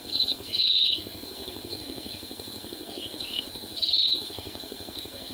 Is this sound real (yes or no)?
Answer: no